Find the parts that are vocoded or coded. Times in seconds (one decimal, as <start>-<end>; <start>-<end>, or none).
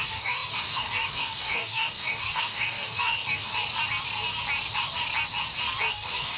0.0-3.5; 5.9-6.4